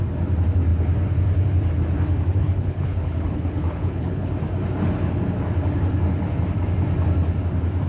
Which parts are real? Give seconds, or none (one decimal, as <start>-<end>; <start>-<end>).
0.0-2.4; 4.3-7.9

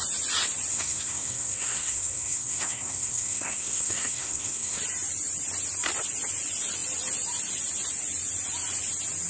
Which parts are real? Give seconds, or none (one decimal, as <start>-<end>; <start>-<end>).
0.0-0.7; 4.8-9.3

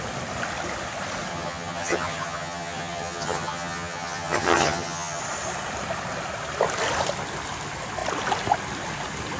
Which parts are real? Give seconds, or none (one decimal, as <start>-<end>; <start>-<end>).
0.0-1.3; 5.2-9.4

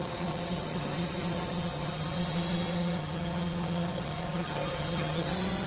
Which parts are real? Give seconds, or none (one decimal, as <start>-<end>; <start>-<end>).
none

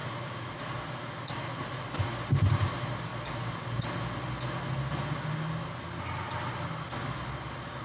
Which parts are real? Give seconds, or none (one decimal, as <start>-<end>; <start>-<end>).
0.0-7.8

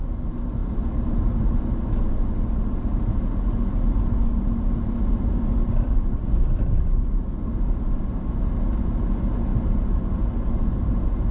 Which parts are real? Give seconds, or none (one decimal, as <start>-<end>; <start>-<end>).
0.0-5.6; 8.6-9.5; 10.2-11.3